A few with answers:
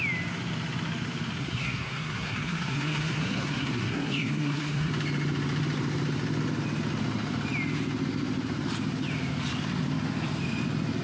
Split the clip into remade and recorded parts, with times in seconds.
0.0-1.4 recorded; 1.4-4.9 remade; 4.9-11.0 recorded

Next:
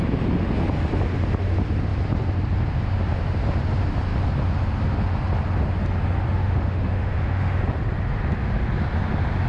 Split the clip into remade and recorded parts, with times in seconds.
0.0-6.4 recorded; 6.4-7.6 remade; 7.6-9.5 recorded

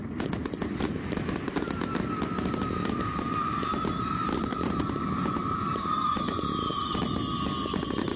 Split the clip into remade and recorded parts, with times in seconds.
0.0-8.2 recorded

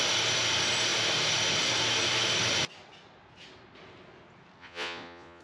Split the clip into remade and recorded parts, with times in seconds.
0.0-4.6 recorded; 4.6-5.4 remade

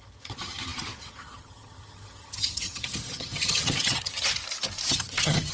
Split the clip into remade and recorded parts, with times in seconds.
0.0-4.4 remade; 4.4-4.9 recorded; 4.9-5.5 remade